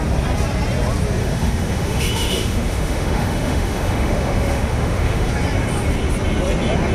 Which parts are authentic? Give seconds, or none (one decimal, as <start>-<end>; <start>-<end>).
0.0-1.2; 5.3-6.9